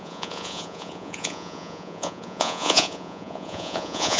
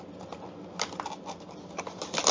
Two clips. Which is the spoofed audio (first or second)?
first